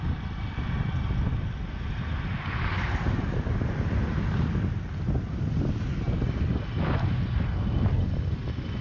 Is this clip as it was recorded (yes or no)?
yes